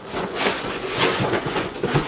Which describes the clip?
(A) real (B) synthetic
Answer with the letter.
B